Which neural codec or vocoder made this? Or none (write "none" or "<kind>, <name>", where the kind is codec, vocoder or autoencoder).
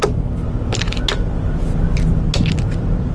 none